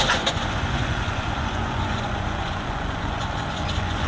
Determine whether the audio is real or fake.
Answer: fake